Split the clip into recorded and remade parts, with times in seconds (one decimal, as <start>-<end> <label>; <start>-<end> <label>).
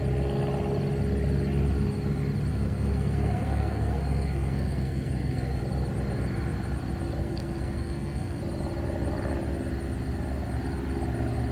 0.0-2.5 recorded; 2.5-5.6 remade; 5.6-7.2 recorded; 7.2-8.4 remade; 8.4-11.5 recorded